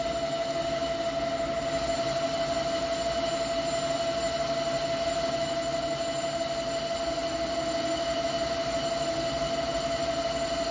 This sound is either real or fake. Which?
real